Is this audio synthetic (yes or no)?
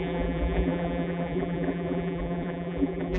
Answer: yes